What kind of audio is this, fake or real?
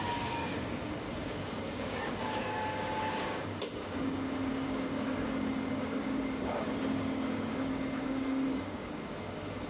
fake